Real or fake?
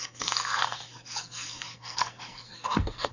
fake